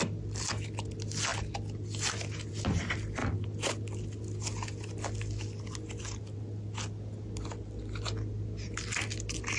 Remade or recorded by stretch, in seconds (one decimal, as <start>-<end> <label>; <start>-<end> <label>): 0.0-9.6 recorded